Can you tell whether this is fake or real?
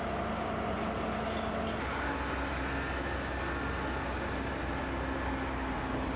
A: real